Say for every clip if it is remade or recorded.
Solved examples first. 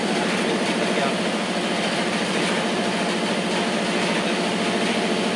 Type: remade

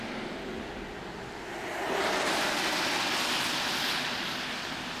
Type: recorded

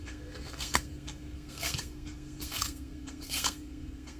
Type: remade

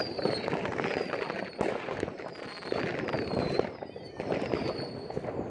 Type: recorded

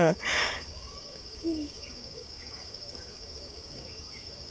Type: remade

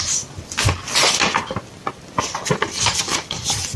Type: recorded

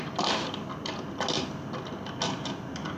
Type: recorded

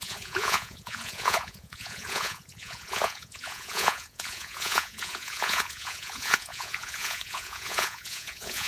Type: remade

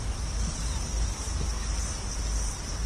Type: recorded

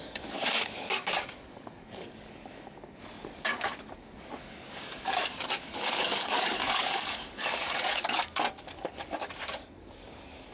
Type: remade